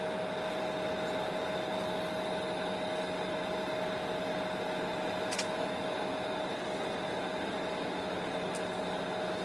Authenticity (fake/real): real